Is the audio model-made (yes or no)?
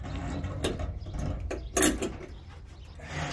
no